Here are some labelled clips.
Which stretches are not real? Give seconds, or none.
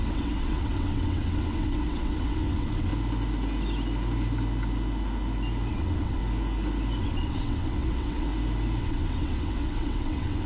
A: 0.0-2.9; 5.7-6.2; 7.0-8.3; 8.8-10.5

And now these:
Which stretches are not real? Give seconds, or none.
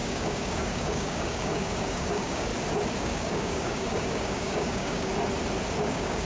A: 0.0-2.5; 3.0-5.1; 5.8-6.2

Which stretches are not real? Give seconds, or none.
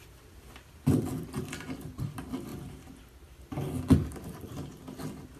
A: none